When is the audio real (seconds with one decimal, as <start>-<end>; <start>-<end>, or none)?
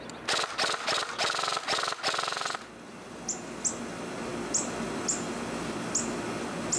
0.0-6.8